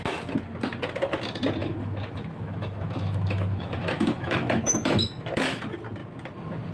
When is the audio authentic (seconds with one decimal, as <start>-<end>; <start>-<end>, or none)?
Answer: 0.0-1.6; 5.6-6.7